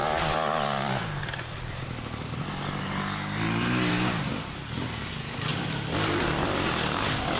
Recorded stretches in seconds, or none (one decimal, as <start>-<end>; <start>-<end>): 0.0-5.5; 6.4-7.4